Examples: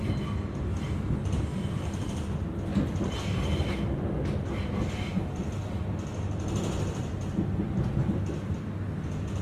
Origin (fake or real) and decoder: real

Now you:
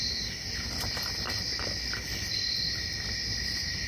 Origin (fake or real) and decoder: real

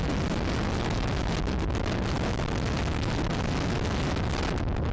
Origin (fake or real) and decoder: real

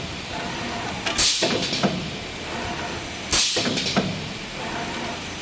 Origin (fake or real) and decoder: real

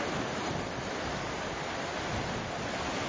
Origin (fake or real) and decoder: real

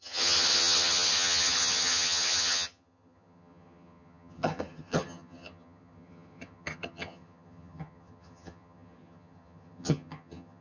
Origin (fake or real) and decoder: fake, vocoder, HiFi-GAN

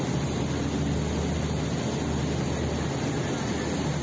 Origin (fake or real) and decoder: real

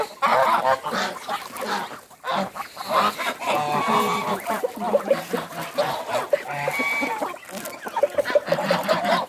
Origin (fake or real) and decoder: real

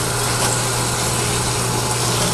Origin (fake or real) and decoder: real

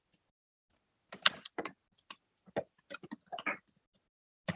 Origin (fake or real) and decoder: real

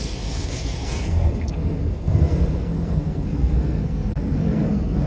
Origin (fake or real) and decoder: fake, codec, SNAC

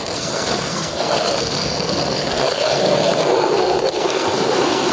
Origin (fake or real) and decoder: fake, codec, SNAC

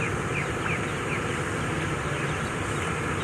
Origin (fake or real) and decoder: real